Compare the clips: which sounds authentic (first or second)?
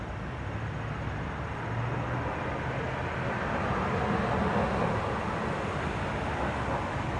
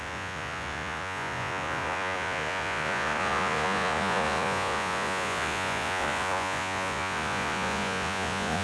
first